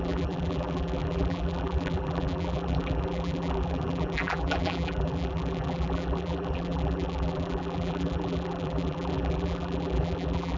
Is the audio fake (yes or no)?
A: yes